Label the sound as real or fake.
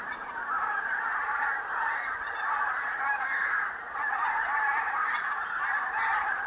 fake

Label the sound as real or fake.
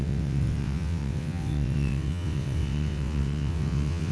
fake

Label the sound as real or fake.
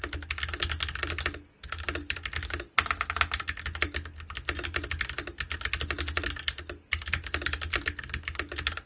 real